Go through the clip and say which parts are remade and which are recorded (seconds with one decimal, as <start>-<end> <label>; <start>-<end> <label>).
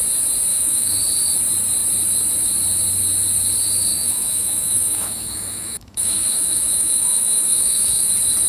0.0-0.5 recorded; 0.5-1.0 remade; 1.0-3.9 recorded; 3.9-8.1 remade; 8.1-8.5 recorded